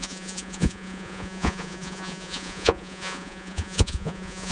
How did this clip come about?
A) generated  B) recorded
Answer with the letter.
A